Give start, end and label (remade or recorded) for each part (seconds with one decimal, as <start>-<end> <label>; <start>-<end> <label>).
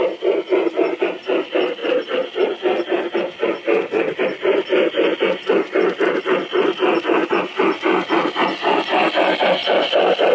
0.0-10.3 recorded